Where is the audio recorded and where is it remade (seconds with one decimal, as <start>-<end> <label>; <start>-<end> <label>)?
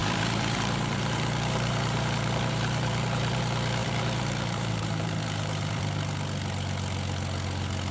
0.0-3.4 remade; 3.4-3.8 recorded; 3.8-5.8 remade; 5.8-7.9 recorded